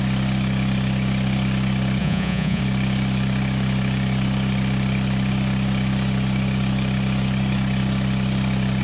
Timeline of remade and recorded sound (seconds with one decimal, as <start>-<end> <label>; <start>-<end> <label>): 0.0-2.0 recorded; 2.0-2.6 remade; 2.6-8.8 recorded